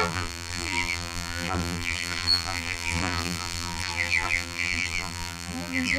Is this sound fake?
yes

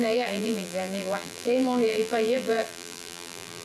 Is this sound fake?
yes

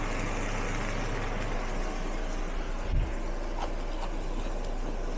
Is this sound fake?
no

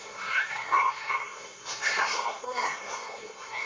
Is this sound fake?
yes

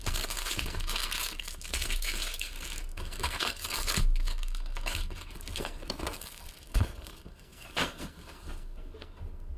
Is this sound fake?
yes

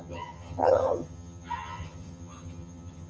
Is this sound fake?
yes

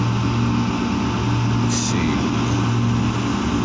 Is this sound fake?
no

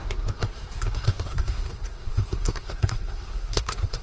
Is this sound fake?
yes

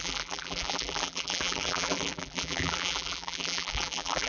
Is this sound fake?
yes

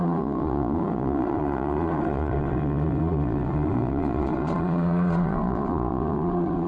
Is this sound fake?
yes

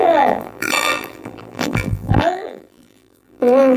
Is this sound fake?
yes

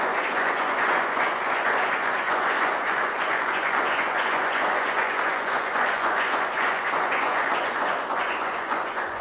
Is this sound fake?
yes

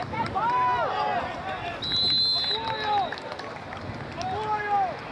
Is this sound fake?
no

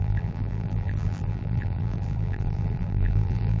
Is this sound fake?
yes